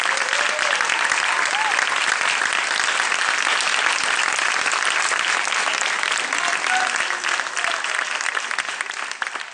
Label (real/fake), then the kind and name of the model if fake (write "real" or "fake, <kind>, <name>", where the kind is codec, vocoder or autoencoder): real